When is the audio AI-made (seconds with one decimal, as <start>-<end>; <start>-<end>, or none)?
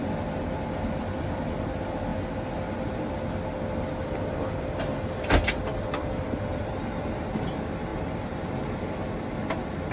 none